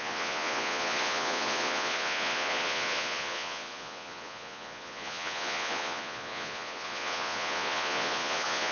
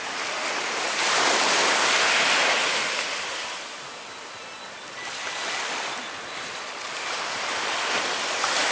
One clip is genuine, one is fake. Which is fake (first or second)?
first